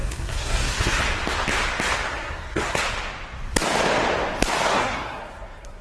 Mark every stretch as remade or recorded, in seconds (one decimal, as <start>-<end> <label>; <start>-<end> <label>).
0.0-1.0 remade; 1.0-2.1 recorded; 2.1-2.8 remade; 2.8-4.7 recorded; 4.7-5.8 remade